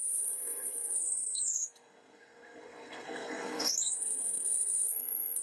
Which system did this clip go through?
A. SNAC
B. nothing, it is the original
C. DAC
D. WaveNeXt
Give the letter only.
A